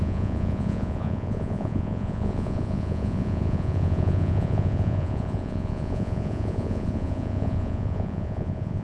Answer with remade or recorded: remade